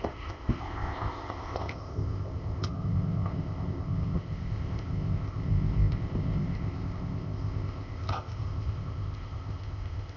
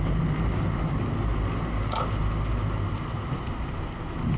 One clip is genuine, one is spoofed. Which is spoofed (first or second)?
first